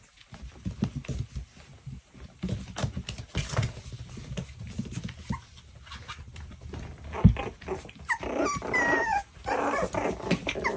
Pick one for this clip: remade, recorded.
recorded